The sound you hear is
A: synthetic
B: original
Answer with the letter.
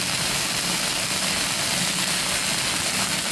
B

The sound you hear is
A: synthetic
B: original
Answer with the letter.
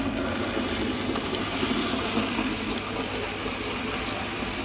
B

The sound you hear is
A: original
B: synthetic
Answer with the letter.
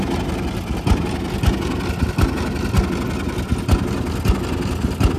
A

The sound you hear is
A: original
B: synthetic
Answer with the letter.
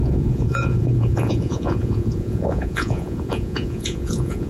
B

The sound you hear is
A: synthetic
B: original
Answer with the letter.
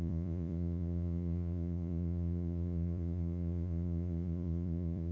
A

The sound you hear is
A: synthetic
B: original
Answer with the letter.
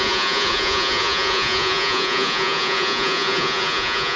A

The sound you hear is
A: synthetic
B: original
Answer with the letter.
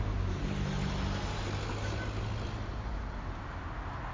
B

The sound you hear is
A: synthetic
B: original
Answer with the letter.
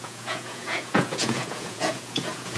A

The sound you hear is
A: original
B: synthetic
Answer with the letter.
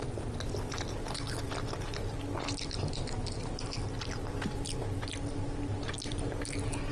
A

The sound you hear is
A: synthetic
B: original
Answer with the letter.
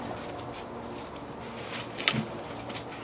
B